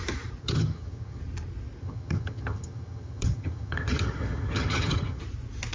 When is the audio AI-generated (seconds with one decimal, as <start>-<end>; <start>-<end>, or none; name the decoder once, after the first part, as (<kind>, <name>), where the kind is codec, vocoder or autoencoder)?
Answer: 0.4-1.2 (vocoder, HiFi-GAN); 1.8-5.2